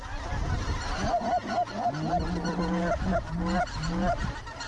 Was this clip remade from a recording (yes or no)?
no